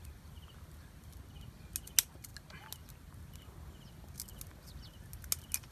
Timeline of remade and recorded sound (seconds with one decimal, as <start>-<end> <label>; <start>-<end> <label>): 0.0-5.7 recorded